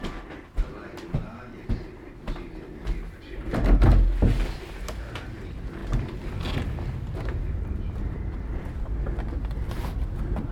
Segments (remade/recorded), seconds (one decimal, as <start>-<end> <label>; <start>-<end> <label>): 0.0-5.8 recorded; 5.8-6.4 remade; 6.4-10.5 recorded